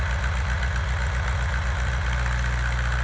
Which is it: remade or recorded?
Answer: recorded